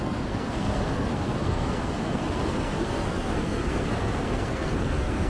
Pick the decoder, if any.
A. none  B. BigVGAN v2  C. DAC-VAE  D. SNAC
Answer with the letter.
D